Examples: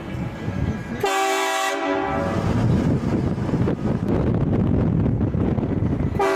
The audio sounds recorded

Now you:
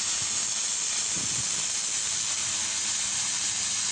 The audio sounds recorded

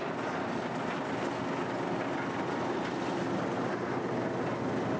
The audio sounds recorded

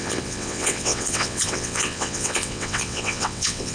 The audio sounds remade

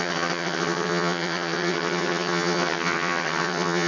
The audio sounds remade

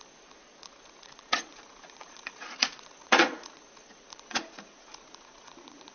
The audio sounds remade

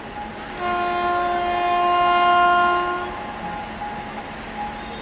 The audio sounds recorded